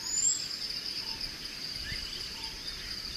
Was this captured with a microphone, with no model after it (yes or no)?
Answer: yes